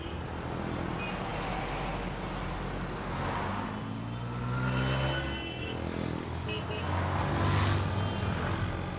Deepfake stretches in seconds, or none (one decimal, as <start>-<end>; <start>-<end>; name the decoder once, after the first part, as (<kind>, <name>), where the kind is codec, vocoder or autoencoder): none